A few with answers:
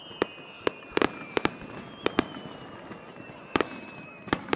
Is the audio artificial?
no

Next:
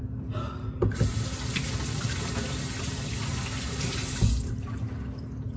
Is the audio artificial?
no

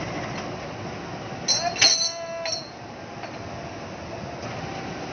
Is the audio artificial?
no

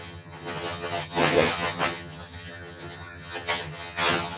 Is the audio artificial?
yes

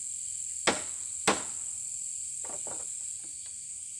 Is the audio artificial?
no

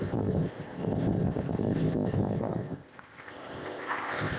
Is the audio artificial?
yes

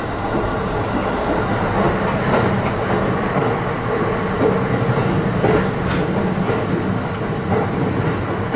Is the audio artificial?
no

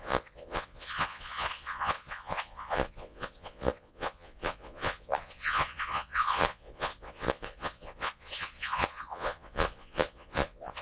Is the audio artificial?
yes